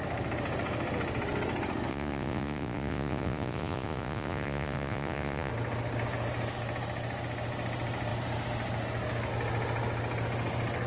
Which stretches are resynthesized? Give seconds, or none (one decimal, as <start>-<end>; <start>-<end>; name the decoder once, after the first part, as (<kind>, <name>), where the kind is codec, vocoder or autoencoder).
1.9-5.5 (vocoder, Vocos)